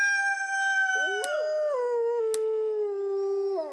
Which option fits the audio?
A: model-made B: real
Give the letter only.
B